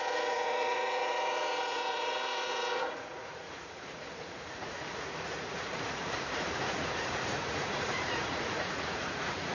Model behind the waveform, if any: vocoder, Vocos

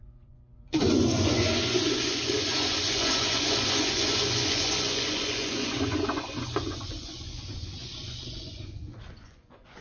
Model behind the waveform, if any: vocoder, Vocos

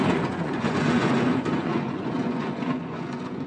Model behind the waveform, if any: vocoder, Vocos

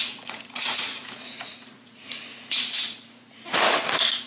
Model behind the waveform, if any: vocoder, Vocos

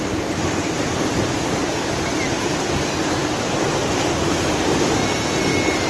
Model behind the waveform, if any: none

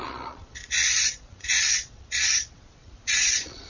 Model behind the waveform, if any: vocoder, Vocos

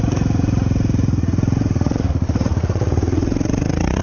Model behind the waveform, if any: vocoder, Vocos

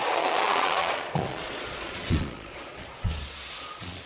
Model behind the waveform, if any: vocoder, Vocos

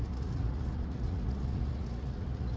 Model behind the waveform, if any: vocoder, Vocos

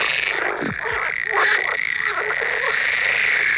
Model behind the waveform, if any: none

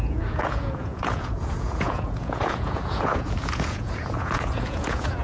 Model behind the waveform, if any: vocoder, Vocos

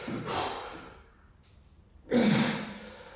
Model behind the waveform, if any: none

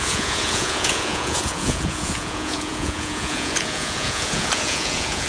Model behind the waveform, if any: vocoder, Vocos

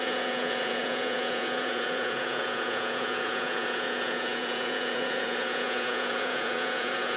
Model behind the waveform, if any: vocoder, Vocos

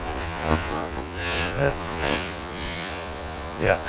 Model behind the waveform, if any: vocoder, Vocos